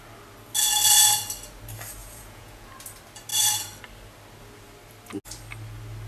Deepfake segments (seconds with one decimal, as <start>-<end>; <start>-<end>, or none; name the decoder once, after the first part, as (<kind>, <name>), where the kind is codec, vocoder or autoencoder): 2.0-2.7 (vocoder, Vocos)